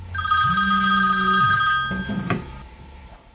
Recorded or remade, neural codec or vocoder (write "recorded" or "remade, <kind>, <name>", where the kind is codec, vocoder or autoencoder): recorded